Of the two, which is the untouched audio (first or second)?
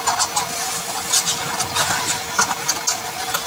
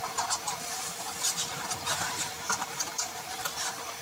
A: first